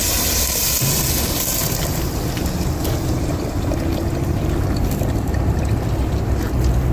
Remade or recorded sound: recorded